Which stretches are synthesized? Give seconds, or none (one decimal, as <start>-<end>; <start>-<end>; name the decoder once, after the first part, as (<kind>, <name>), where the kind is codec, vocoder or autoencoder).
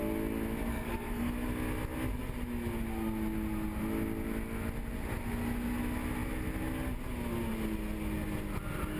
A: 0.7-1.3 (codec, SNAC)